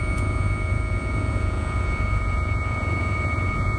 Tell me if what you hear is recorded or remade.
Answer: remade